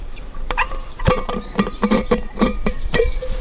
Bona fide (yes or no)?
no